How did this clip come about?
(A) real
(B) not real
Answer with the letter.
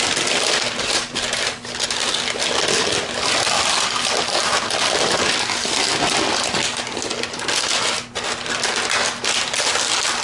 A